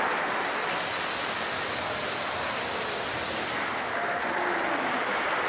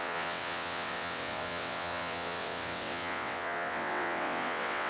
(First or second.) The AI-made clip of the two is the second